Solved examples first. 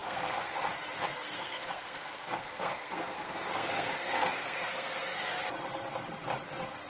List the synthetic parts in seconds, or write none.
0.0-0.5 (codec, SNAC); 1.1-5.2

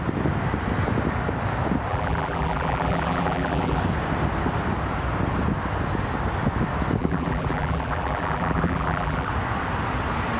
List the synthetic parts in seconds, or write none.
1.9-3.8 (vocoder, BigVGAN v2); 7.0-9.3

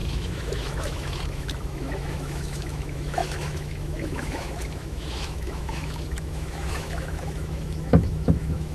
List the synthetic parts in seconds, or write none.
0.0-8.7 (autoencoder, DAC-VAE)

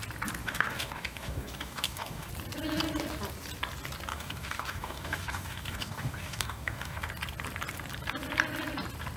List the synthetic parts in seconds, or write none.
0.4-2.3 (codec, DAC); 4.1-7.1